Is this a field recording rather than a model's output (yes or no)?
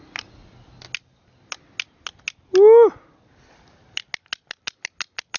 yes